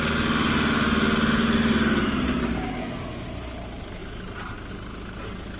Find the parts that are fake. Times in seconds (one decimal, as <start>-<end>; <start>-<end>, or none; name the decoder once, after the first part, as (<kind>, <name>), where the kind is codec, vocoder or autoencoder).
none